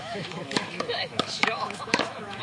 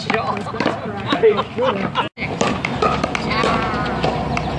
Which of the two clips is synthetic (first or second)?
first